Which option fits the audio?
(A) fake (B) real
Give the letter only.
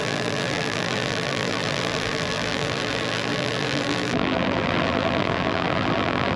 A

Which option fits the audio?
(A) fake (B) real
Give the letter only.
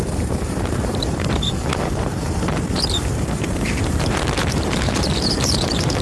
A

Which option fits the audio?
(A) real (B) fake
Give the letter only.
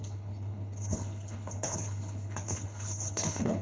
B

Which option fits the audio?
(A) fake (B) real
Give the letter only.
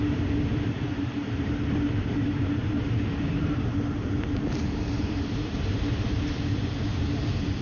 A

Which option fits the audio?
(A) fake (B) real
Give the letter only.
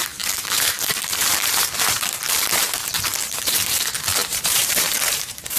A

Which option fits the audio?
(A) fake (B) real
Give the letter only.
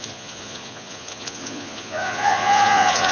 A